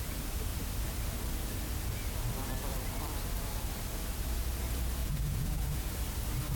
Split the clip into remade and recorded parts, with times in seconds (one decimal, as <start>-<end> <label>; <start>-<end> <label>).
0.0-5.0 recorded; 5.0-5.9 remade; 5.9-6.6 recorded